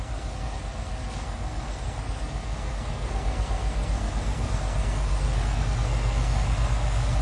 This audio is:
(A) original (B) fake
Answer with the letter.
B